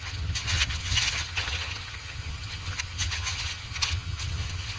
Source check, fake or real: fake